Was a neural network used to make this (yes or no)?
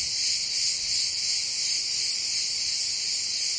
no